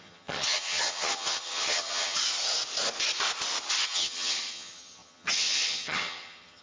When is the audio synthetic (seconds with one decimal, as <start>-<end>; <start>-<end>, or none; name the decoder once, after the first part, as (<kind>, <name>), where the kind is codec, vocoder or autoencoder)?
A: 0.0-2.2 (vocoder, HiFi-GAN); 3.7-6.6